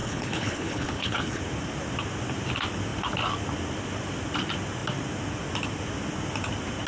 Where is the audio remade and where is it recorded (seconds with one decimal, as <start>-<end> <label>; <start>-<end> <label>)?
0.0-1.4 remade; 1.4-6.9 recorded